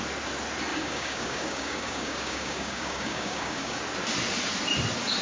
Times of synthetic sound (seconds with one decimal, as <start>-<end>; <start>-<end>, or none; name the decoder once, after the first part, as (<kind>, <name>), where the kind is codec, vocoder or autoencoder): 0.7-3.8 (codec, DAC)